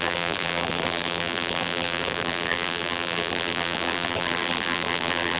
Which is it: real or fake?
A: fake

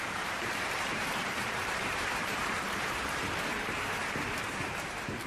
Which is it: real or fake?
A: fake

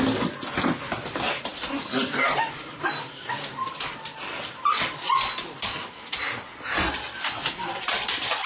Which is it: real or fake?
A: fake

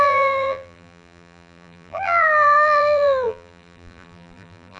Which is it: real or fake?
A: fake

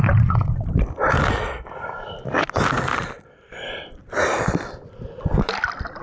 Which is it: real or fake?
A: fake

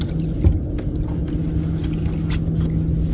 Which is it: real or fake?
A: real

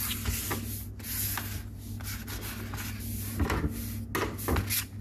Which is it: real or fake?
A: real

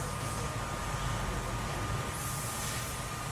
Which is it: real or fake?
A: real